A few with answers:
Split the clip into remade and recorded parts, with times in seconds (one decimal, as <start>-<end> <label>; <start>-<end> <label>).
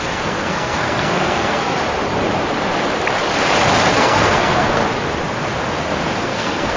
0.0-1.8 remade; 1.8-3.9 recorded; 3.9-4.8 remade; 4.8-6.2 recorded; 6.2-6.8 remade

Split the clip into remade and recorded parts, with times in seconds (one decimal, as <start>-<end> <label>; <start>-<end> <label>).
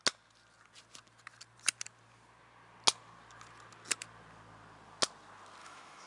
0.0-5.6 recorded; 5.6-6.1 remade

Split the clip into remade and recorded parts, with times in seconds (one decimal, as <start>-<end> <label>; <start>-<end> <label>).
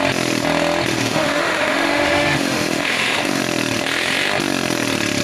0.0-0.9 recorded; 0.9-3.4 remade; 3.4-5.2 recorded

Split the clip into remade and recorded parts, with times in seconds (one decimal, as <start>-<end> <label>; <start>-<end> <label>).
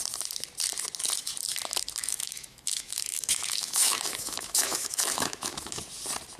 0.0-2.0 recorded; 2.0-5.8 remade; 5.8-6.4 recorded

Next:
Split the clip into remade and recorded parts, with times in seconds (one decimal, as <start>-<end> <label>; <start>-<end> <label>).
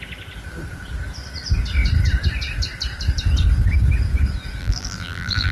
0.0-4.6 recorded; 4.6-5.5 remade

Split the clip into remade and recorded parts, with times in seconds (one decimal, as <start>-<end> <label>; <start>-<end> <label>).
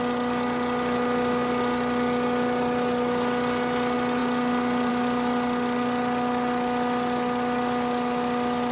0.0-8.7 recorded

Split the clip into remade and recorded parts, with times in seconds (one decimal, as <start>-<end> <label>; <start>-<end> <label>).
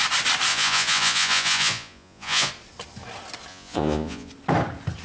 0.0-0.5 recorded; 0.5-2.5 remade; 2.5-3.5 recorded; 3.5-4.3 remade; 4.3-5.0 recorded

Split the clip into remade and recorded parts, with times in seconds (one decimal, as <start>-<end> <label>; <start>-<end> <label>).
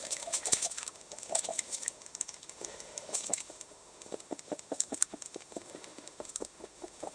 0.0-7.1 remade